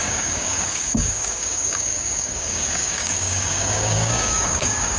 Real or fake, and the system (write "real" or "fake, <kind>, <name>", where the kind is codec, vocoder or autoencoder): fake, codec, DAC